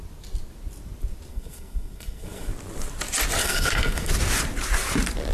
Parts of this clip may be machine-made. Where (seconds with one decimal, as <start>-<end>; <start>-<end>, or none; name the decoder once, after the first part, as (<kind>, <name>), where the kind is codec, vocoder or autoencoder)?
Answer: 1.3-2.5 (codec, SNAC); 3.4-4.1